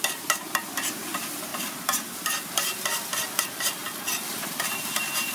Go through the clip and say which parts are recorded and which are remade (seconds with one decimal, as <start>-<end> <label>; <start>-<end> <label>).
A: 0.0-1.5 remade; 1.5-3.4 recorded; 3.4-3.8 remade; 3.8-4.5 recorded; 4.5-5.3 remade